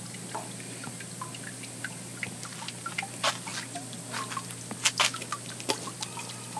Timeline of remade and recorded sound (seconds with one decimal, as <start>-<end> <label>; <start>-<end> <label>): 0.0-6.6 recorded